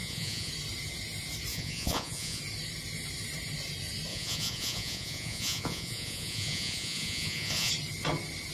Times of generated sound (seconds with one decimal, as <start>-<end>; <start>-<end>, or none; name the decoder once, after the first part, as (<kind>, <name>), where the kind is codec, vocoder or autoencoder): 0.0-0.5 (vocoder, Vocos); 1.5-2.4; 4.1-7.7

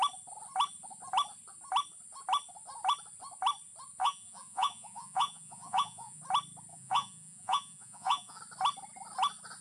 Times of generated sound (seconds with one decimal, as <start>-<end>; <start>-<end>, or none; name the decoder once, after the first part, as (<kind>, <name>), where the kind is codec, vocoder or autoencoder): 4.0-6.2 (vocoder, Vocos); 6.7-8.4

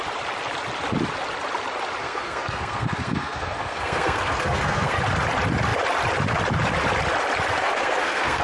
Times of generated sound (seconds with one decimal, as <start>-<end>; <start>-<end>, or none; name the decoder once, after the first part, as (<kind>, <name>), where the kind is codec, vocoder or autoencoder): 2.0-5.0 (codec, SNAC); 7.6-8.4

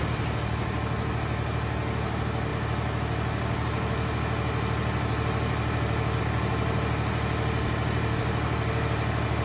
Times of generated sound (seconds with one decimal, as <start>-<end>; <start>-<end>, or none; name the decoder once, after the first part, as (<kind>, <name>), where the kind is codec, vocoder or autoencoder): none

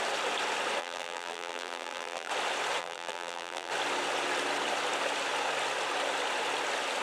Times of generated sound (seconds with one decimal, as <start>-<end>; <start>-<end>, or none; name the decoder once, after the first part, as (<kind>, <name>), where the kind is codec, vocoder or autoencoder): 0.8-2.3 (vocoder, BigVGAN v2); 2.8-3.7

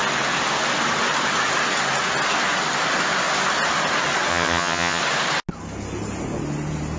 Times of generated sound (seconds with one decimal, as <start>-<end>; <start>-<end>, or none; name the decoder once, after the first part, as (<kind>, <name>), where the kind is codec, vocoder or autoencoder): 4.3-5.0 (vocoder, HiFi-GAN)